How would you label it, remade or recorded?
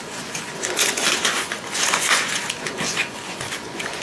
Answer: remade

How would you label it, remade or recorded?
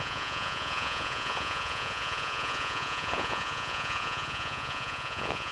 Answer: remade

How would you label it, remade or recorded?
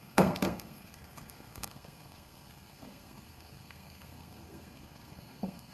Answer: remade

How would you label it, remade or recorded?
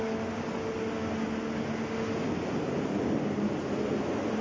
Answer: recorded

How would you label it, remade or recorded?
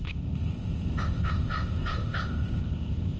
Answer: remade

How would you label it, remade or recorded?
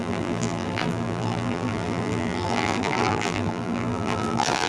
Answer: remade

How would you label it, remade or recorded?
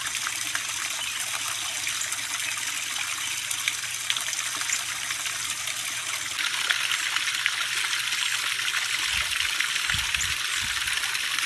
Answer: recorded